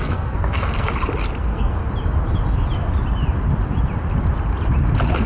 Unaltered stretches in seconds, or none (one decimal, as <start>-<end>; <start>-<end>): 0.9-1.4; 1.8-5.3